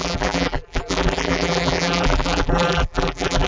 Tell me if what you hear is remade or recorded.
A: remade